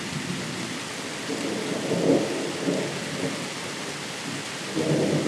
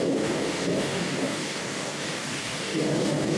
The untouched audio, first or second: first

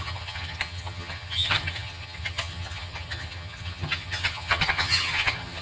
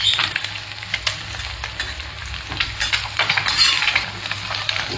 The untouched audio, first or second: second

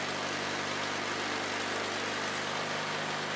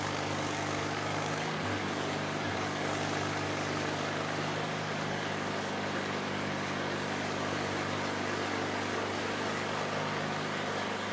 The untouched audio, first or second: first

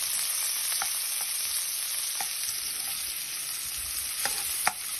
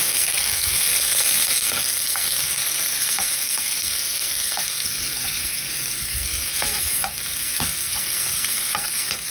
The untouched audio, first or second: first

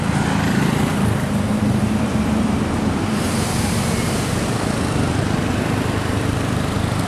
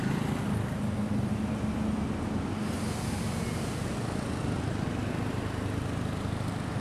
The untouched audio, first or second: second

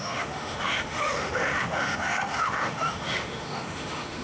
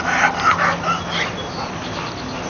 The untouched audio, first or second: second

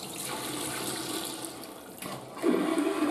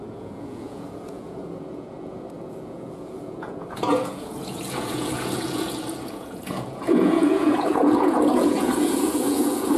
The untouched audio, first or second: first